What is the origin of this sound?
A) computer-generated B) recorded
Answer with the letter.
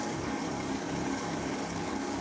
A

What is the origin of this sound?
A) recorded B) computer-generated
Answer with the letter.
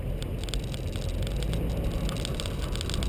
A